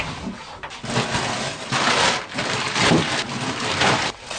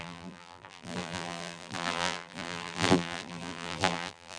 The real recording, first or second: first